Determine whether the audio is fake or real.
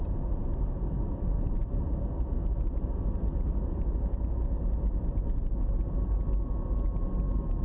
real